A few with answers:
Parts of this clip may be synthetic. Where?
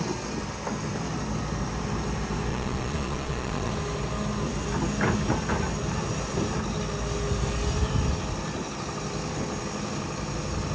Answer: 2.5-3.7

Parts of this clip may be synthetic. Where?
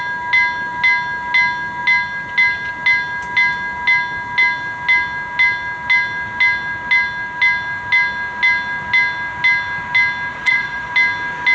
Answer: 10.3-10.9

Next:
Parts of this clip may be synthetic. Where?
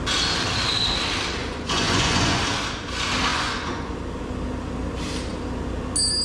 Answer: 1.4-2.4; 3.3-3.9